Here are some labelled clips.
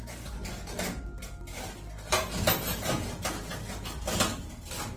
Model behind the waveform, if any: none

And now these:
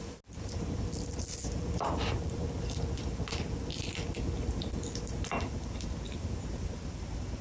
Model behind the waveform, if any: none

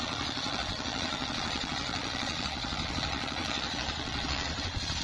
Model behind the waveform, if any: vocoder, Vocos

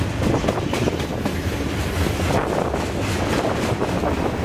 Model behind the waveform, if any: none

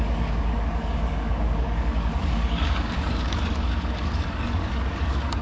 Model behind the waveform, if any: codec, DAC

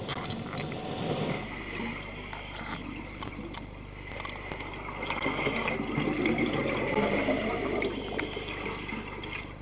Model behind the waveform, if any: none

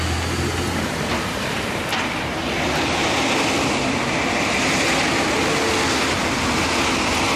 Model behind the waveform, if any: none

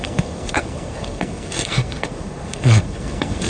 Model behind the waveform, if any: codec, SNAC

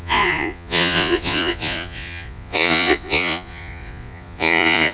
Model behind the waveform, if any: vocoder, Vocos